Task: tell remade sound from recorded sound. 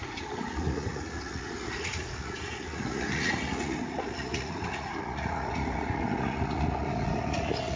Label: remade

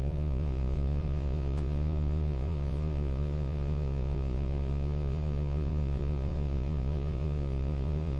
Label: remade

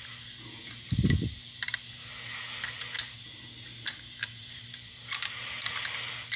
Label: recorded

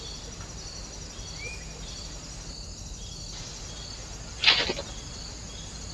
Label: recorded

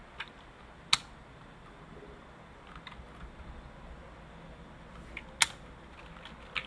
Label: recorded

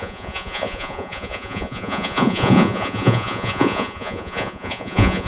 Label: remade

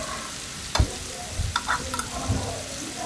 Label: recorded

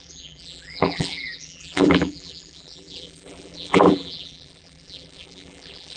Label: remade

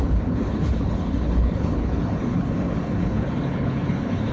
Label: remade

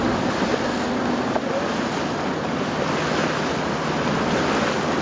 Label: recorded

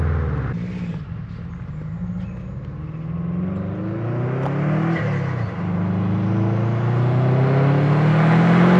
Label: recorded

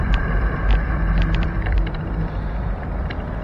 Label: remade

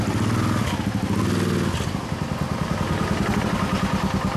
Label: recorded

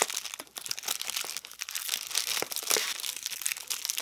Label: recorded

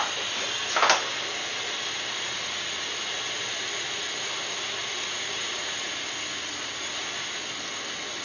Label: recorded